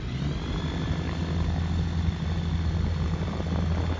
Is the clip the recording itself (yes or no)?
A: yes